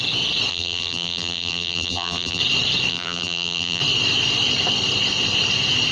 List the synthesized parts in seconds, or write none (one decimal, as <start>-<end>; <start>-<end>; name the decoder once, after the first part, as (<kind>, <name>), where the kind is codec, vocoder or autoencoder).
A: 0.5-2.4 (vocoder, BigVGAN v2); 2.9-3.8